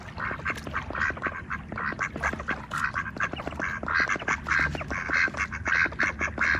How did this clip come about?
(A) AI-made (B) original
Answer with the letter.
B